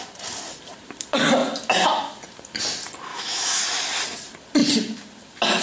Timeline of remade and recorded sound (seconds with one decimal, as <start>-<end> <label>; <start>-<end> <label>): 0.0-3.1 recorded; 3.1-3.6 remade; 3.6-5.6 recorded